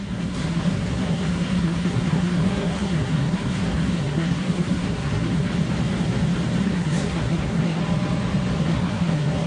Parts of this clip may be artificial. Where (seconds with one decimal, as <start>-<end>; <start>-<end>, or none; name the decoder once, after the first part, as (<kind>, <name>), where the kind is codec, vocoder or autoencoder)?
0.0-5.5 (codec, SNAC); 6.6-7.8; 8.6-9.5